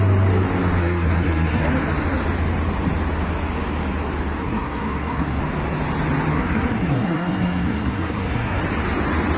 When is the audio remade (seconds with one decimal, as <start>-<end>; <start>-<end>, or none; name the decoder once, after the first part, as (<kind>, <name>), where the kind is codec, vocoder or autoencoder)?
0.8-1.6 (codec, SNAC); 4.4-5.4; 6.3-8.6